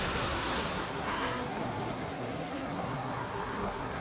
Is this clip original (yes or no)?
no